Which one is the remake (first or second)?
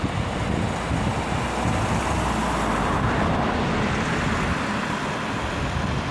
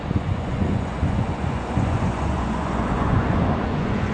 second